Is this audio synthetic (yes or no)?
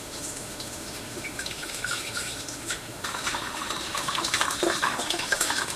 yes